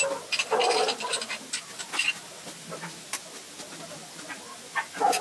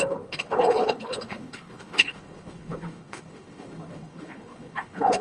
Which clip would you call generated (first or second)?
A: second